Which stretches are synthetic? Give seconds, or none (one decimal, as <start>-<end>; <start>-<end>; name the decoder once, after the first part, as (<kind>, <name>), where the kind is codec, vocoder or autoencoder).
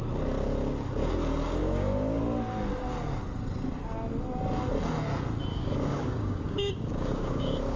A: 1.6-2.2 (codec, DAC); 5.5-7.8